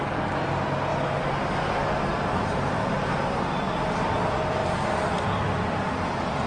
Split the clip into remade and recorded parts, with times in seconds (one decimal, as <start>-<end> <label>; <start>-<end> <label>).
0.0-2.1 recorded; 2.1-2.9 remade; 2.9-6.5 recorded